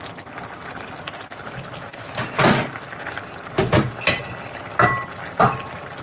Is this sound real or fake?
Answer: real